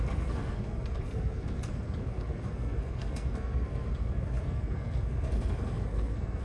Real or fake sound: fake